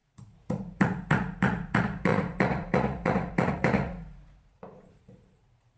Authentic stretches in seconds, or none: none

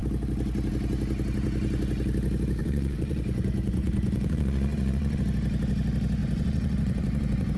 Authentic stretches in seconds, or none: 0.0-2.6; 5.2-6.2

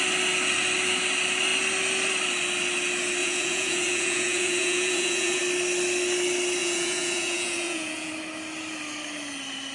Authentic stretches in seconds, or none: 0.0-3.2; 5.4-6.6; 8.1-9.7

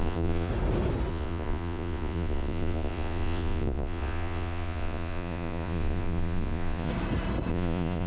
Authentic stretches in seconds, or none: 0.5-1.1; 6.9-7.5